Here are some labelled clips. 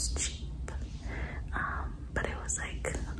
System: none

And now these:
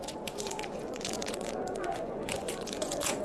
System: vocoder, Vocos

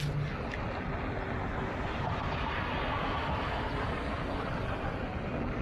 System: none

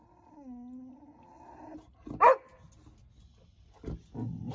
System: none